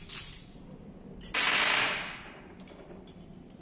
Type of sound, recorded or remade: recorded